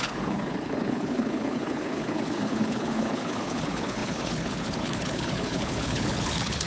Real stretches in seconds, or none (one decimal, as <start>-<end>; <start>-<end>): none